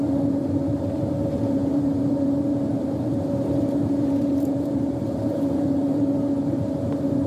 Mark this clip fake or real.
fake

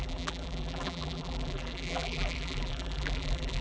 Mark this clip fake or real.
fake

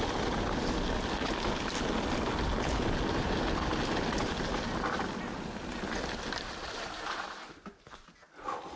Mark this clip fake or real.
real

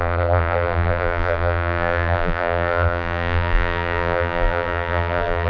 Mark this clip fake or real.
fake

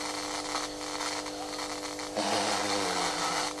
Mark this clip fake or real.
real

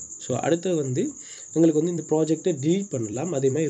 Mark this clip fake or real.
fake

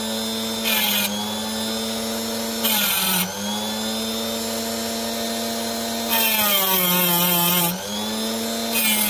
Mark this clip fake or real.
real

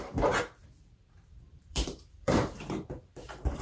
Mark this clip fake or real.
fake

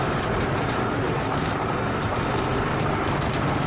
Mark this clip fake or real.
fake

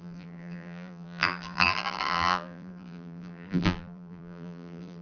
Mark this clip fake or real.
fake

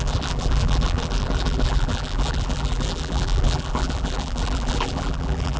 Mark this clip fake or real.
fake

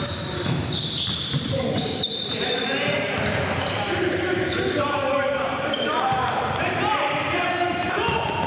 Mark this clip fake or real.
fake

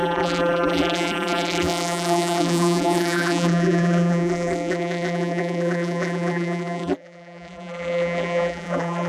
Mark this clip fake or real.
fake